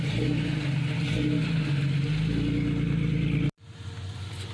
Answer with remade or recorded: recorded